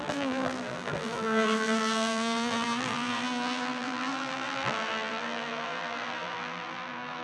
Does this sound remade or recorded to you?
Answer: remade